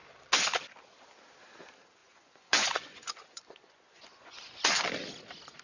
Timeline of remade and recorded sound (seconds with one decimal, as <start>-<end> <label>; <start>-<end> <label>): 0.0-2.0 recorded; 2.0-4.6 remade; 4.6-5.6 recorded